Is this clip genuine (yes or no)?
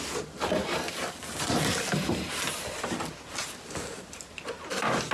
yes